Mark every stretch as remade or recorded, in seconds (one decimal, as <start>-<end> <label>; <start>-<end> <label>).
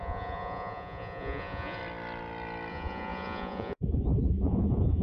0.0-1.8 remade; 1.8-2.7 recorded; 2.7-5.0 remade